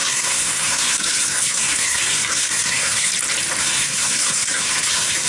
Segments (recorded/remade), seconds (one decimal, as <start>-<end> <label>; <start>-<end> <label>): 0.0-3.1 remade; 3.1-3.6 recorded; 3.6-5.3 remade